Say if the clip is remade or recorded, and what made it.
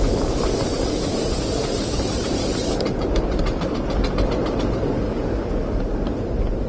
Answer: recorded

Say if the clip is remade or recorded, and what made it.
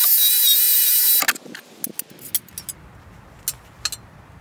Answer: recorded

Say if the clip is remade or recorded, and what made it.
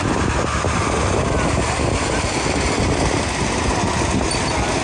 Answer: recorded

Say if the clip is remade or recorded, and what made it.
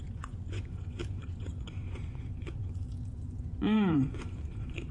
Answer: remade, vocoder, Vocos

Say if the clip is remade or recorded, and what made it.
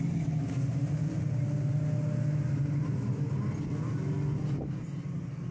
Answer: recorded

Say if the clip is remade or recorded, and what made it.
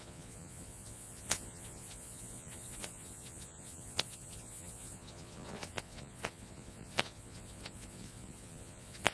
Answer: remade, vocoder, Vocos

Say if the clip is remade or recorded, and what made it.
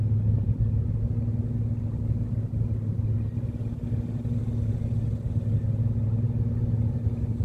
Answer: recorded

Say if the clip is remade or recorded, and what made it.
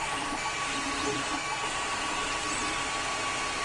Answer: recorded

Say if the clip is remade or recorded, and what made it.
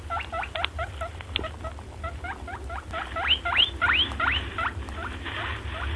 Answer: recorded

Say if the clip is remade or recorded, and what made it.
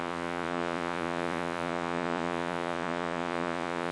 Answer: remade, vocoder, Vocos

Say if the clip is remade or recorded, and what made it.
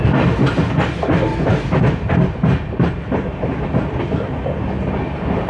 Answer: recorded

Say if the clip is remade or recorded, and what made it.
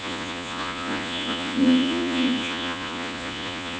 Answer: remade, vocoder, Vocos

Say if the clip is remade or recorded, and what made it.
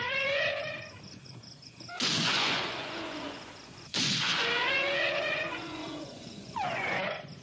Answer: remade, vocoder, Vocos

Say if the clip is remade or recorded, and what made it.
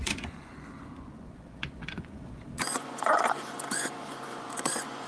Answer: remade, vocoder, Vocos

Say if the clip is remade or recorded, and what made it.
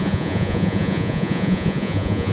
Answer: remade, vocoder, Vocos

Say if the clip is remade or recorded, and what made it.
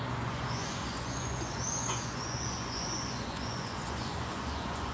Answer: remade, vocoder, Vocos